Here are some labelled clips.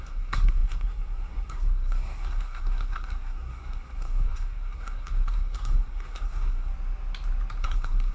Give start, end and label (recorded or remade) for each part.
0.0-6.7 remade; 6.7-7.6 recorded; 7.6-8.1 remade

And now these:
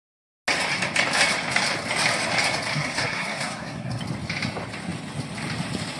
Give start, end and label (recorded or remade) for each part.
0.0-2.7 recorded; 2.7-4.0 remade; 4.0-6.0 recorded

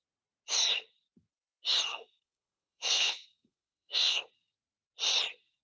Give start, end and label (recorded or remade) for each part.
0.0-1.9 recorded; 1.9-4.2 remade; 4.2-5.6 recorded

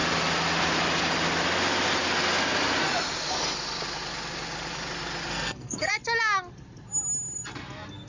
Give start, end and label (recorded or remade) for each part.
0.0-5.3 recorded; 5.3-5.9 remade; 5.9-8.1 recorded

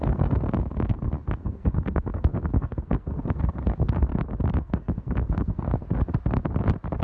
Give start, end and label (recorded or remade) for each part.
0.0-4.1 remade; 4.1-4.6 recorded; 4.6-5.8 remade; 5.8-7.0 recorded